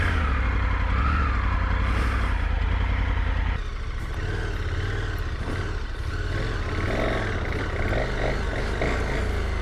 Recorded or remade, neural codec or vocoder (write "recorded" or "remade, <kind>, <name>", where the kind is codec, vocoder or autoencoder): recorded